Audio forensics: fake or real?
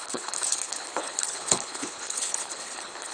fake